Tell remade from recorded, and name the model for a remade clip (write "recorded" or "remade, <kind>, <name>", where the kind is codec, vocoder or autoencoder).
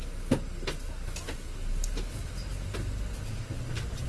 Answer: recorded